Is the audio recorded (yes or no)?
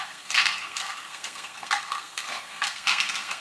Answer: no